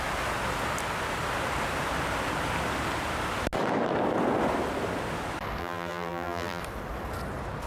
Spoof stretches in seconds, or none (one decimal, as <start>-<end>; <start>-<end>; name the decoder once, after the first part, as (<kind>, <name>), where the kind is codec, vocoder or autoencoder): 5.6-6.6 (vocoder, BigVGAN v2)